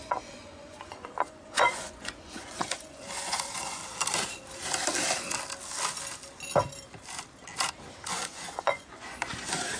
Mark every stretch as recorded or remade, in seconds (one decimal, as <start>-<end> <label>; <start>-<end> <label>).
0.0-3.8 remade; 3.8-8.1 recorded; 8.1-9.8 remade